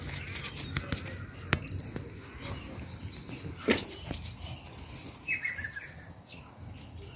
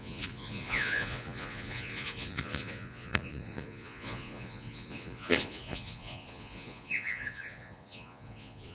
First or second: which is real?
first